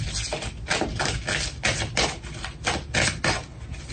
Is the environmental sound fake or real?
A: real